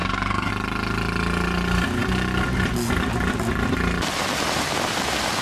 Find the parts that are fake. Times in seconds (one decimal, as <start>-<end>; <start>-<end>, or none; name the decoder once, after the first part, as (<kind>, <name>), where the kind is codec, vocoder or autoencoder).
0.0-0.5 (codec, SNAC)